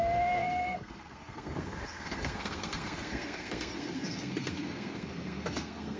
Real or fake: fake